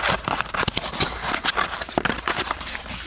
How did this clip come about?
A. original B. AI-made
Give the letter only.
A